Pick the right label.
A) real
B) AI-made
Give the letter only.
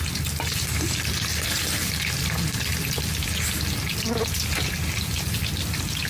A